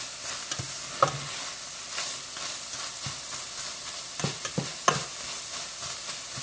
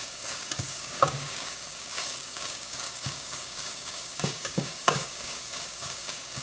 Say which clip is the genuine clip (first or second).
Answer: first